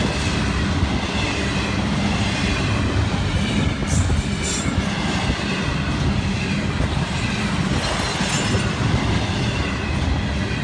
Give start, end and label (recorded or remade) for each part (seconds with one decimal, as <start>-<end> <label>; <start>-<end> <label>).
0.0-10.6 recorded